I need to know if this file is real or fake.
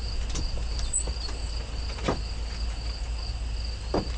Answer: real